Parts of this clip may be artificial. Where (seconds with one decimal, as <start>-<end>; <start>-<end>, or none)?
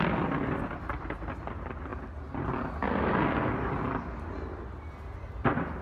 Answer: none